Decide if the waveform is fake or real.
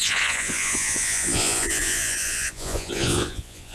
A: fake